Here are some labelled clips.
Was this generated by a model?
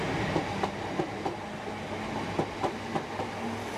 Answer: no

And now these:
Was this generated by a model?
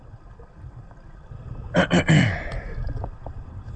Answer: no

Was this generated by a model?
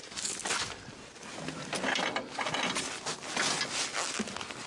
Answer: no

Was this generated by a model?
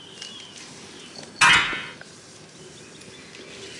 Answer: no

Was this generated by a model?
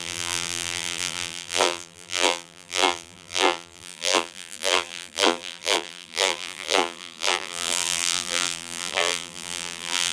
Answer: yes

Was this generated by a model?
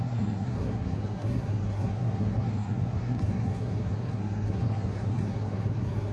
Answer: yes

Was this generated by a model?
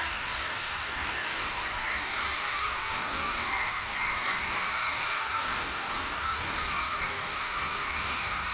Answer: yes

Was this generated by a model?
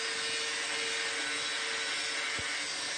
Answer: no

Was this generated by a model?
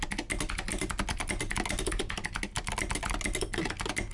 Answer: no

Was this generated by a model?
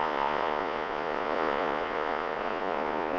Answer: yes